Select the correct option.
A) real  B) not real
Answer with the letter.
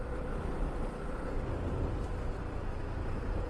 A